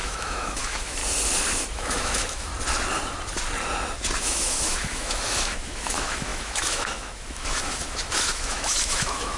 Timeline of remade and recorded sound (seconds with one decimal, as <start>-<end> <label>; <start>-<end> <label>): 0.0-1.0 remade; 1.0-1.7 recorded; 1.7-2.5 remade; 2.5-4.2 recorded; 4.2-9.4 remade